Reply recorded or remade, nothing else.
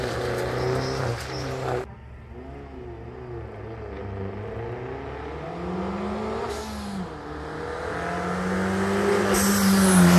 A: recorded